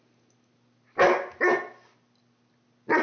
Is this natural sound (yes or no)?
yes